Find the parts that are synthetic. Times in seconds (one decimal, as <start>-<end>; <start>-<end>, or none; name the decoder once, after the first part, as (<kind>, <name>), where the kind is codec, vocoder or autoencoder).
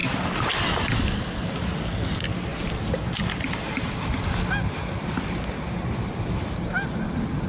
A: none